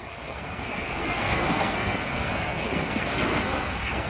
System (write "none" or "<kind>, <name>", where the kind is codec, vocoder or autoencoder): codec, SNAC